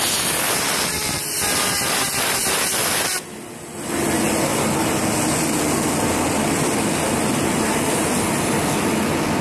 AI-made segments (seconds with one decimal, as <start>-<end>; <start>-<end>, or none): none